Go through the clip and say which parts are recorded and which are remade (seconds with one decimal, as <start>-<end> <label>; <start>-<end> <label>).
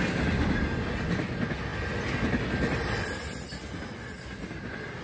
0.0-5.0 recorded